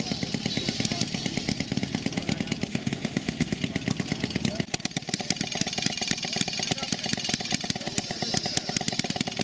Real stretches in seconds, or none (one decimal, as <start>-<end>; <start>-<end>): 0.0-2.7; 3.6-9.4